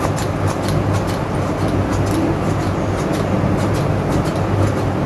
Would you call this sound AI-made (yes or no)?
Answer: no